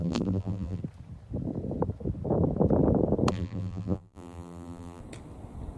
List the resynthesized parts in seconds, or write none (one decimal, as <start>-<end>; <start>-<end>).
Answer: 0.0-0.8; 3.3-5.0